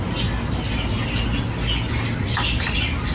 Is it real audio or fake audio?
real